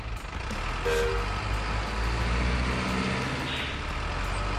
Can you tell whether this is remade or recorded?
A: recorded